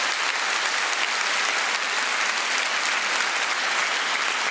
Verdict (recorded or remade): recorded